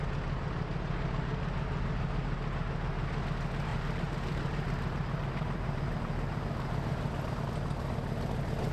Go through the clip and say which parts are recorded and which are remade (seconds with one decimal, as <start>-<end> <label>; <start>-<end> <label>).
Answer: 0.0-3.7 recorded; 3.7-7.4 remade; 7.4-8.7 recorded

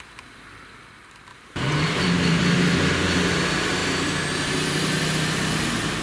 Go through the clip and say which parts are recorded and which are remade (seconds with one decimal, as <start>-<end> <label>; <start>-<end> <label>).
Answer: 0.0-1.3 recorded; 1.3-2.4 remade; 2.4-3.8 recorded; 3.8-5.0 remade; 5.0-6.0 recorded

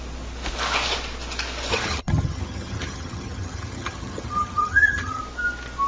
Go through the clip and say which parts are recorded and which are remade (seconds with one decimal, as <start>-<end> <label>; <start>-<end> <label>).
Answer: 0.0-1.7 recorded; 1.7-5.2 remade; 5.2-5.9 recorded

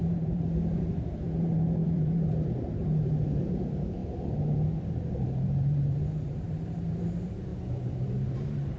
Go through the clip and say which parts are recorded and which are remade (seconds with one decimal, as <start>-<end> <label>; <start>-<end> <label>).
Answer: 0.0-4.0 remade; 4.0-5.2 recorded; 5.2-8.8 remade

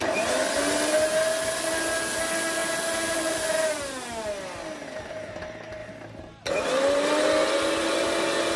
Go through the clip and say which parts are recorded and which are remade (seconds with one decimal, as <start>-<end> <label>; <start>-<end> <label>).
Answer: 0.0-2.6 recorded; 2.6-5.3 remade; 5.3-8.6 recorded